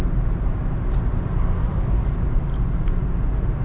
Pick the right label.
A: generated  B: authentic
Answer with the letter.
B